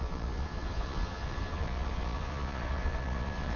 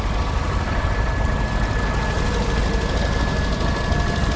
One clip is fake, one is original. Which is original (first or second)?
second